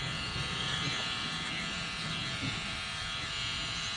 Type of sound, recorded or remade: remade